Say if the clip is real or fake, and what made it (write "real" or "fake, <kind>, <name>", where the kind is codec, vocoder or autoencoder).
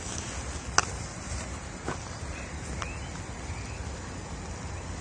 real